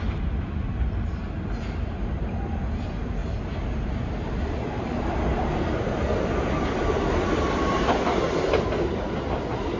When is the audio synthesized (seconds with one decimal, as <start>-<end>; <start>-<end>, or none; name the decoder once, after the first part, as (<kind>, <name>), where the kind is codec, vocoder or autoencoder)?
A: none

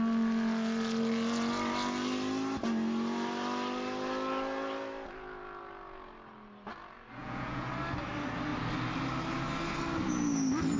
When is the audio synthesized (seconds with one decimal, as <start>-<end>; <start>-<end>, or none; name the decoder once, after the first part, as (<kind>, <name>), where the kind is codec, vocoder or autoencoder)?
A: 7.2-7.7 (vocoder, Vocos)

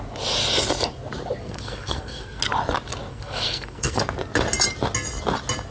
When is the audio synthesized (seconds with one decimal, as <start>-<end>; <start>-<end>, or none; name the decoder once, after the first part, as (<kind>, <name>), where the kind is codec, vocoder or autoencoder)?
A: 1.4-2.4 (codec, SNAC); 3.1-4.0

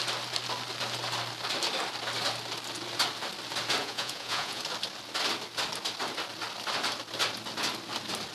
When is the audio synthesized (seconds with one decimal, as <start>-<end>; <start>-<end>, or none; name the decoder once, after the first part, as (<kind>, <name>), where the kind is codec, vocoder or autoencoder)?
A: 3.8-4.6 (vocoder, Vocos)